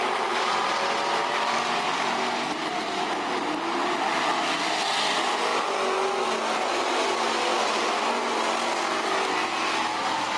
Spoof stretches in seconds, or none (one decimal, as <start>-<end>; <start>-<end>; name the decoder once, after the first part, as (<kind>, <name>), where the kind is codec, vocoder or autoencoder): 2.7-3.5 (vocoder, BigVGAN v2)